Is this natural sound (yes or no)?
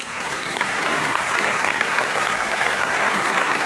no